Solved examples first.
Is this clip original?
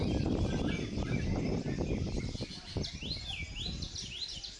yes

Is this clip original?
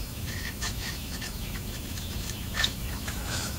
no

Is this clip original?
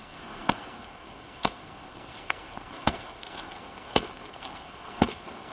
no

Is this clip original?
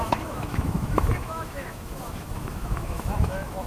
no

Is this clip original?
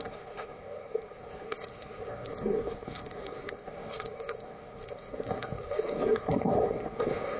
no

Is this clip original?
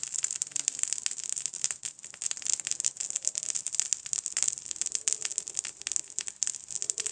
yes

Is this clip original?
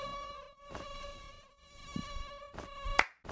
yes